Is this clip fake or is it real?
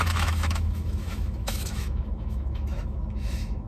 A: fake